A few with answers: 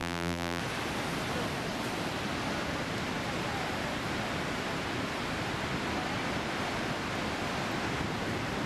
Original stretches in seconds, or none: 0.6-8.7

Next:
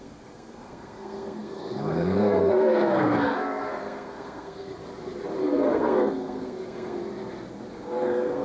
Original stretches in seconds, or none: 4.8-5.4; 7.0-7.7

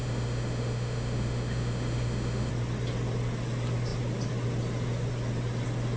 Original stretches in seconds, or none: 2.5-6.0

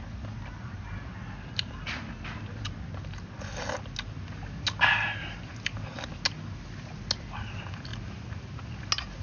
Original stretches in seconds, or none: 0.0-9.2